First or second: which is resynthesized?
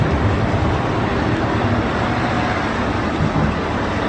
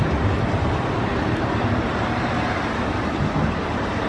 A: second